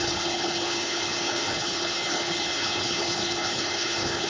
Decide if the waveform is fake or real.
fake